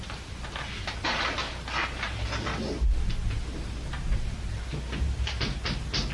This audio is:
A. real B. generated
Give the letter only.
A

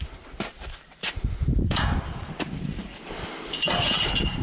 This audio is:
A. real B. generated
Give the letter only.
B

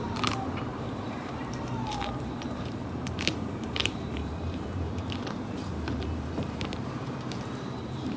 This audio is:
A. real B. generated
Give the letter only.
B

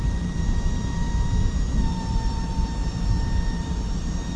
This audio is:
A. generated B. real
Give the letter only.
A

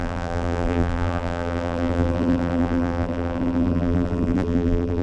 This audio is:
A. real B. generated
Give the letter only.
B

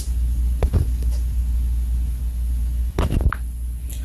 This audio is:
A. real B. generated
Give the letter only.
A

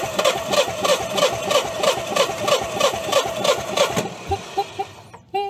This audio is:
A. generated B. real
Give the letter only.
A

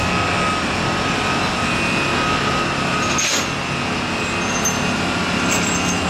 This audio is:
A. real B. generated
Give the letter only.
A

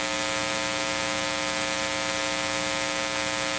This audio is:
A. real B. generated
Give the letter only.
A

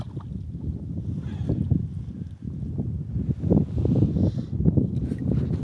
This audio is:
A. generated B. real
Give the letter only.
B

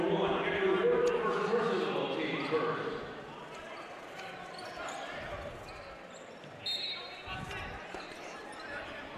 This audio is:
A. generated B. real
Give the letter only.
B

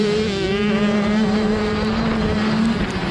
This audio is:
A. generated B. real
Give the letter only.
B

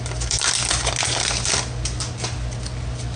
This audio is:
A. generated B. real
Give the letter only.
B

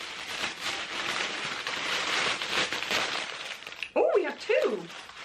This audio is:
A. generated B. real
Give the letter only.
A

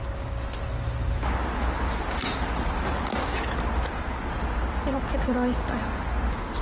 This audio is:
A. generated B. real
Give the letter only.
B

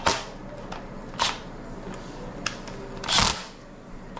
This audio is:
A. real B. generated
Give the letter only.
A